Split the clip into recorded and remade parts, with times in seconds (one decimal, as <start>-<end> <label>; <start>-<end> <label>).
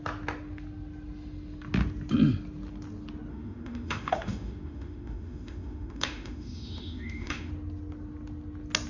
0.0-3.3 recorded; 3.3-7.5 remade; 7.5-8.9 recorded